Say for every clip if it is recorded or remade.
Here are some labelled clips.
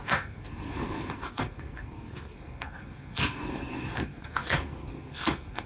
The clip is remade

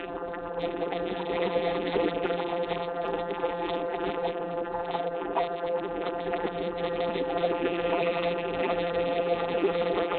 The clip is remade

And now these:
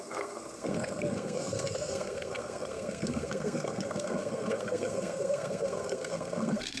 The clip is remade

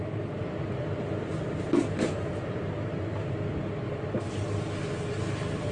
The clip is recorded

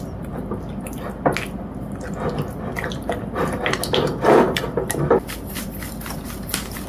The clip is recorded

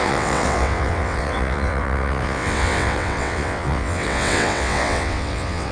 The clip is remade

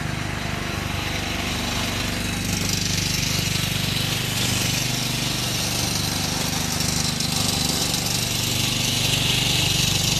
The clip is recorded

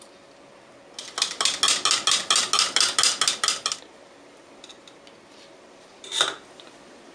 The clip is recorded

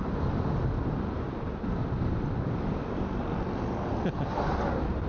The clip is recorded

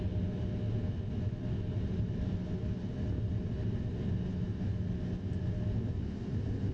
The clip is recorded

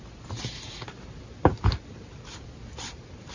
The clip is recorded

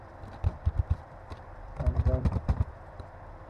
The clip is remade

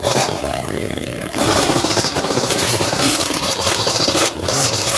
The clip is remade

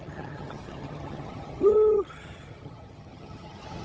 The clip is remade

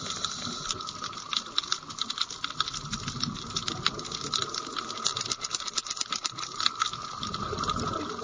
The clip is recorded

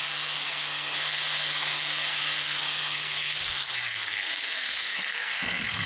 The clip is remade